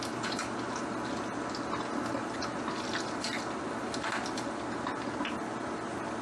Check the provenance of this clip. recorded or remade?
recorded